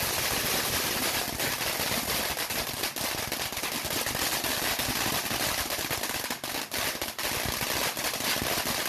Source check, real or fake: real